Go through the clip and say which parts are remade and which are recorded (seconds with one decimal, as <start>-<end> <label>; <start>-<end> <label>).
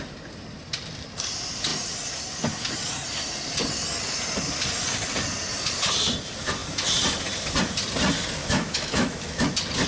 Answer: 0.0-8.4 recorded; 8.4-9.5 remade; 9.5-9.9 recorded